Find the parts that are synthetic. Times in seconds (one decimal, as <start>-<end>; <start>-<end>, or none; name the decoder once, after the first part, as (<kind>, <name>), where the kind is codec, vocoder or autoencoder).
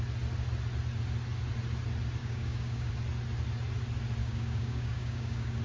2.2-2.9 (codec, DAC); 4.2-5.6